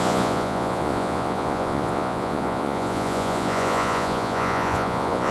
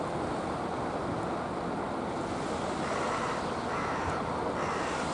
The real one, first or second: second